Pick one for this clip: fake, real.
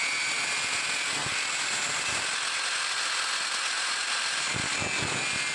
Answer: real